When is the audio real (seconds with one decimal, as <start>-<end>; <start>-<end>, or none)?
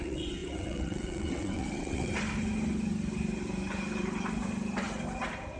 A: 2.1-5.6